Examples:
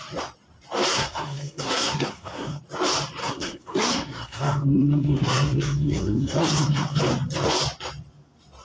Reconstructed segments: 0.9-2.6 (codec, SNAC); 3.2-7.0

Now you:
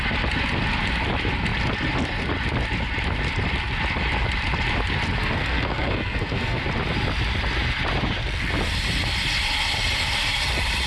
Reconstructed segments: 5.2-6.6 (codec, SNAC)